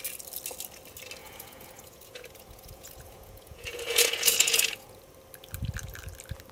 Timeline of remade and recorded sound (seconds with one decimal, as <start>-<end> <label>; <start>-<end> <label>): 0.0-1.2 recorded; 1.2-5.0 remade; 5.0-6.5 recorded